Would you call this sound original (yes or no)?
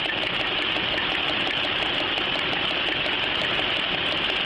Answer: yes